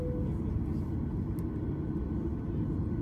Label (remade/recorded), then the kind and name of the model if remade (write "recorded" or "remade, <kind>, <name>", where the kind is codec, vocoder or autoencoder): recorded